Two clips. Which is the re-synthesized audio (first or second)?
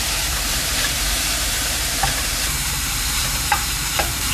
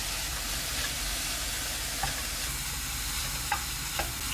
first